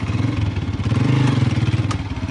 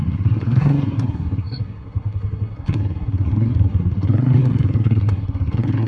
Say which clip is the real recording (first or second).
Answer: first